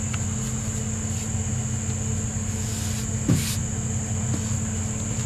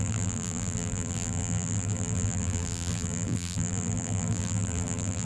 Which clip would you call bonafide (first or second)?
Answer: first